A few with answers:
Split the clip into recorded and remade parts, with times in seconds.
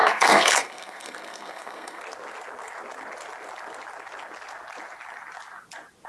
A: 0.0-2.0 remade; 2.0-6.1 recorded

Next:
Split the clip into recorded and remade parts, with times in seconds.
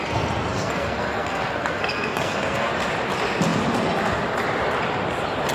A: 0.0-0.5 recorded; 0.5-2.7 remade; 2.7-5.5 recorded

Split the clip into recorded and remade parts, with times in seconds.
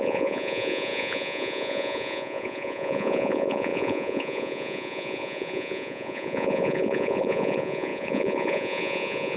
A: 0.0-9.4 remade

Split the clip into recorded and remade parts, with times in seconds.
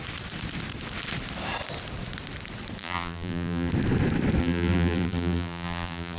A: 0.0-2.8 recorded; 2.8-3.7 remade; 3.7-4.4 recorded; 4.4-6.2 remade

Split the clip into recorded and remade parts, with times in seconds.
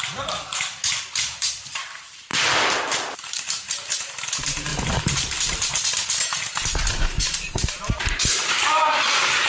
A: 0.0-2.3 remade; 2.3-2.8 recorded; 2.8-4.7 remade; 4.7-6.9 recorded; 6.9-9.5 remade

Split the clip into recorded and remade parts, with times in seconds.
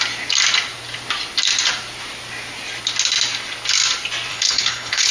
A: 0.0-4.3 recorded; 4.3-5.1 remade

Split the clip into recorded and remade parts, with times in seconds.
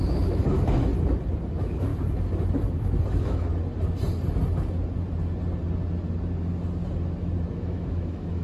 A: 0.0-0.9 remade; 0.9-1.5 recorded; 1.5-1.9 remade; 1.9-3.1 recorded; 3.1-3.5 remade; 3.5-7.5 recorded; 7.5-8.4 remade